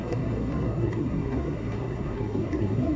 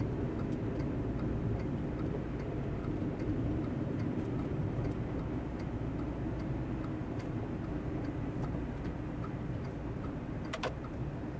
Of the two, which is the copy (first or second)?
first